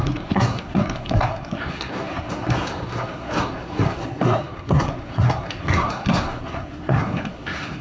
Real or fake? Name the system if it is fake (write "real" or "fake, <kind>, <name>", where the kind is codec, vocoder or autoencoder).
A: fake, codec, SNAC